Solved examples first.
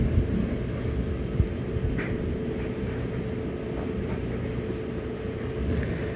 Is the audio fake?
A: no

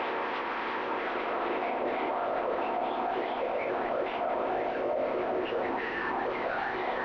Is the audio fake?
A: yes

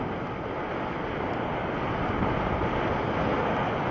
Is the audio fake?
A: no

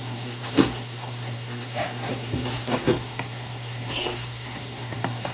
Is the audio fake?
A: yes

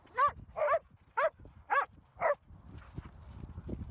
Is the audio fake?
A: no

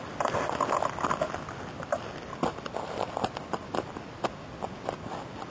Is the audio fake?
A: no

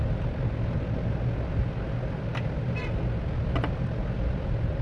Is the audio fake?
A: no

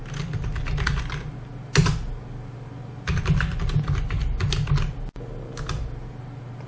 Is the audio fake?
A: no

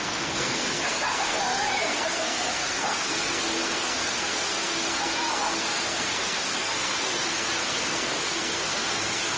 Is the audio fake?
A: yes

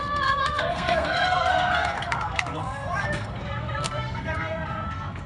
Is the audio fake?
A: yes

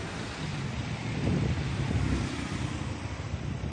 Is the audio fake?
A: no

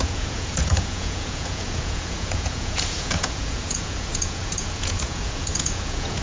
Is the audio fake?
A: yes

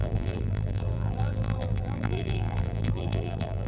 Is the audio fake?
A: yes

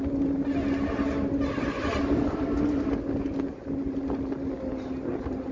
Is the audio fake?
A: no